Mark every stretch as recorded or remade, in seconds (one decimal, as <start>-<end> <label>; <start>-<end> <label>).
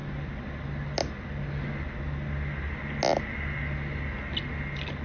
0.0-5.0 recorded